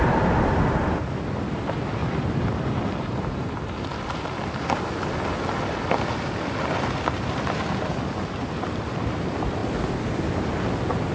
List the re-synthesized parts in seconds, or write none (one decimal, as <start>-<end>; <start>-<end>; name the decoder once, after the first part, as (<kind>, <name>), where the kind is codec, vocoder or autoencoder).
0.0-2.0 (vocoder, BigVGAN v2); 3.0-11.1